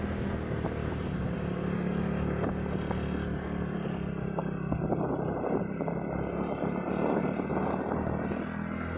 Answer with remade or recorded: recorded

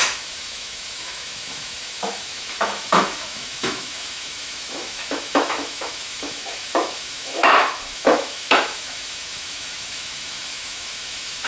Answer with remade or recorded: remade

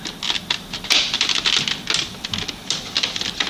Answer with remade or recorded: recorded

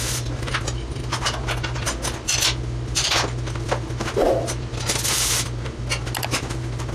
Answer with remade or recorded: recorded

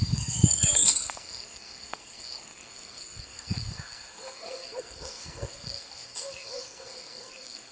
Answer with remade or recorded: remade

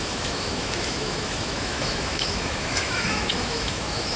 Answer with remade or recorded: remade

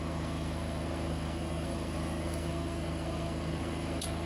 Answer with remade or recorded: remade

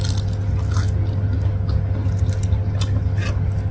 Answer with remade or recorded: recorded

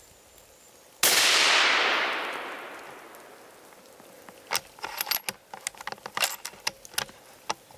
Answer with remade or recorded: recorded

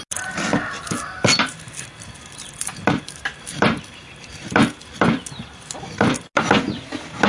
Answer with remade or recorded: recorded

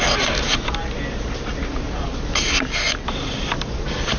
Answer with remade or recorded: recorded